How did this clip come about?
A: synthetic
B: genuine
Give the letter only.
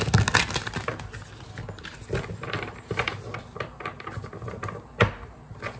B